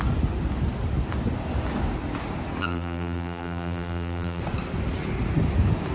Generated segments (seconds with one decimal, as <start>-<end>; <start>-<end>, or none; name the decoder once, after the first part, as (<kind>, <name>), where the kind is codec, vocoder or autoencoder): 2.6-4.4 (vocoder, BigVGAN v2)